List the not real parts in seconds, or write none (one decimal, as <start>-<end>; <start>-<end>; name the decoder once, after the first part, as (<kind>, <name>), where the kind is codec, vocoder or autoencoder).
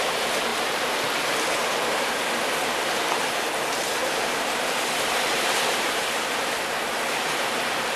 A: 0.0-0.5 (vocoder, BigVGAN v2); 1.5-8.0